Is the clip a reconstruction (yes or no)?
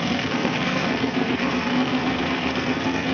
yes